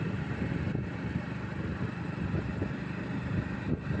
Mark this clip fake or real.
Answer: real